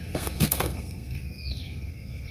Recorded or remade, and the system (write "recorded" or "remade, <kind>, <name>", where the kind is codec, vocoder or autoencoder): remade, codec, SNAC